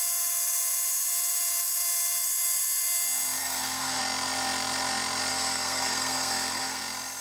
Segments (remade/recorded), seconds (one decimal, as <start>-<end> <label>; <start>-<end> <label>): 0.0-3.4 recorded; 3.4-4.0 remade; 4.0-5.3 recorded; 5.3-6.8 remade; 6.8-7.2 recorded